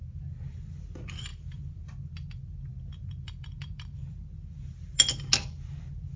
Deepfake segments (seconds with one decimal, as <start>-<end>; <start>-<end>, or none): none